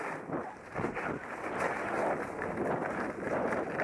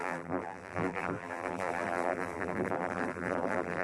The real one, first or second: first